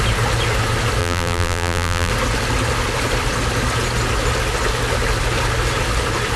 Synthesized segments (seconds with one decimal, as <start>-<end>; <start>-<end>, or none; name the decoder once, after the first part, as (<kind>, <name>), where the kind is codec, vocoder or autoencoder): 1.0-2.1 (vocoder, BigVGAN v2)